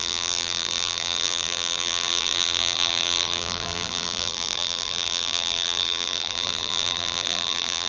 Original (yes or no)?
no